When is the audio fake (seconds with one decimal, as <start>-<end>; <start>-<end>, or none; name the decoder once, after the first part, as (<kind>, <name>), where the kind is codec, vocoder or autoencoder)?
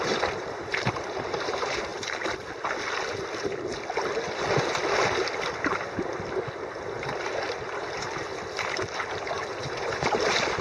0.0-1.9 (vocoder, BigVGAN v2); 6.7-8.3; 9.1-10.6